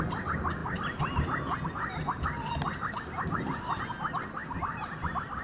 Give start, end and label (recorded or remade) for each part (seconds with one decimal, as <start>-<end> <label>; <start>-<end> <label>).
0.0-5.4 recorded